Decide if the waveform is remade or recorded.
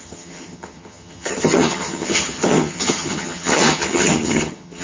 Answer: remade